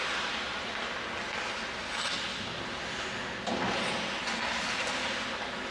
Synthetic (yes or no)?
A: no